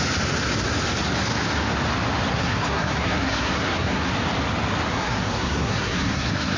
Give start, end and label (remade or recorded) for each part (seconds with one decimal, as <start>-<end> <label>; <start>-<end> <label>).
0.0-2.3 recorded; 2.3-4.1 remade; 4.1-4.9 recorded; 4.9-6.6 remade